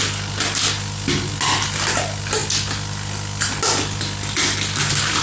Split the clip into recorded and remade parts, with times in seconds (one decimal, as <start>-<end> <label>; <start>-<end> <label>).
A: 0.0-5.2 recorded